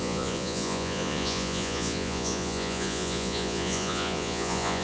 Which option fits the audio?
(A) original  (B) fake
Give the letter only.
B